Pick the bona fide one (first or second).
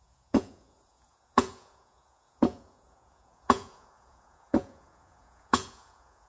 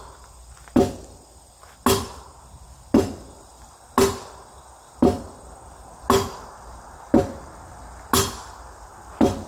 second